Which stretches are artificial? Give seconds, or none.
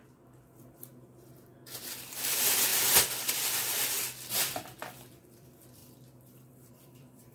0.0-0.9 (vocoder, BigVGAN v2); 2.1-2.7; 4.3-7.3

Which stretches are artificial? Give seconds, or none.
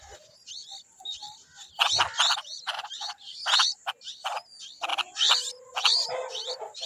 2.4-3.6 (vocoder, BigVGAN v2)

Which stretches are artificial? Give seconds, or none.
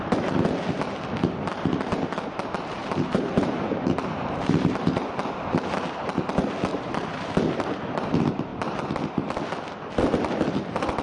2.8-5.0 (vocoder, BigVGAN v2); 6.7-7.3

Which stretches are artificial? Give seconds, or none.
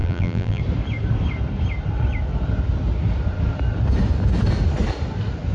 0.0-0.6 (vocoder, BigVGAN v2)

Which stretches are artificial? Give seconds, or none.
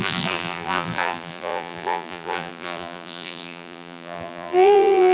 0.0-5.1 (vocoder, BigVGAN v2)